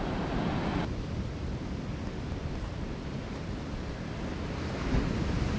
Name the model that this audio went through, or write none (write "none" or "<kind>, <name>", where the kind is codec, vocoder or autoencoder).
none